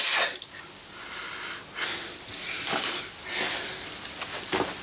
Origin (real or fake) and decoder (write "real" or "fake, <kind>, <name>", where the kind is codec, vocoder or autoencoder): real